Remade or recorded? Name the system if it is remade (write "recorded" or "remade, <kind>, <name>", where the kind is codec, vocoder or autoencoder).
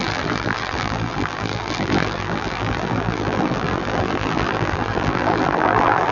remade, vocoder, BigVGAN v2